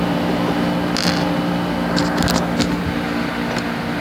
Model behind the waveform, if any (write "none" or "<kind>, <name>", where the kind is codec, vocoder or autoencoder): none